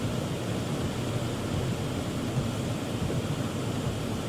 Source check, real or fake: real